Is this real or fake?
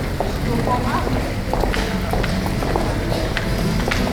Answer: real